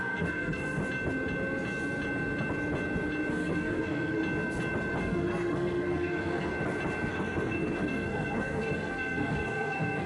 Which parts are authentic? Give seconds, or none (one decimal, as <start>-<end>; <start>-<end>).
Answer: 0.8-3.3; 4.2-5.0; 6.5-7.1